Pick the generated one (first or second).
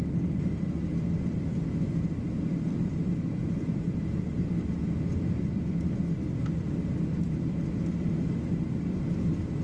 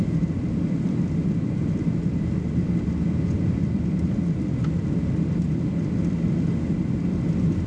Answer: second